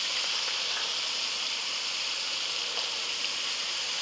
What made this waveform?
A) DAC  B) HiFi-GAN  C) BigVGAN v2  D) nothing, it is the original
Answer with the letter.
D